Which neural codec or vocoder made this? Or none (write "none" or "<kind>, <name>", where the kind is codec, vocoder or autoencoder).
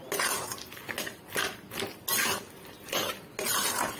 none